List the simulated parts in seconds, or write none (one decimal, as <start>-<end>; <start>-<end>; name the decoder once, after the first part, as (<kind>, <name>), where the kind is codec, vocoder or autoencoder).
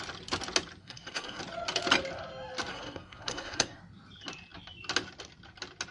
0.8-1.4 (codec, SNAC); 2.7-3.8